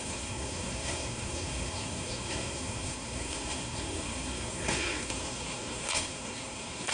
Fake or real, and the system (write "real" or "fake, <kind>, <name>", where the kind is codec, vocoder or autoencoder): fake, codec, SNAC